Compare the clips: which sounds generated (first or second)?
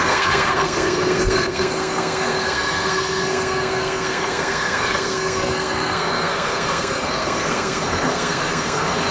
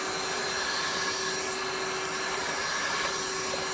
first